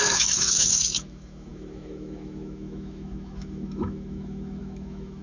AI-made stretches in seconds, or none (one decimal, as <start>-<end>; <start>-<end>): 0.0-5.2